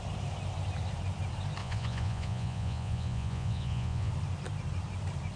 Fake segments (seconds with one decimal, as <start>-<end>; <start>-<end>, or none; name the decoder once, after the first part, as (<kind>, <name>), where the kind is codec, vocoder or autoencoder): 1.6-4.1 (vocoder, Vocos)